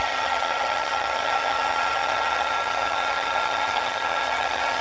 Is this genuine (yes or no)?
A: no